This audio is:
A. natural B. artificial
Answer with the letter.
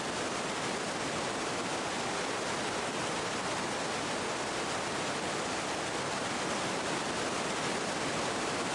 A